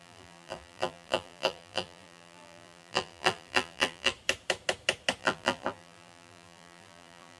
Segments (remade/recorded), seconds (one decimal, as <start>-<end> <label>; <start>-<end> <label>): 0.0-4.1 remade; 4.1-5.2 recorded; 5.2-7.4 remade